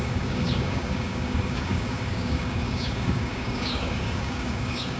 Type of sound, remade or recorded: remade